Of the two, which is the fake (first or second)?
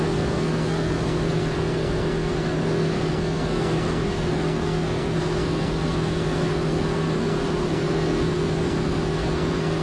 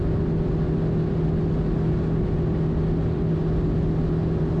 first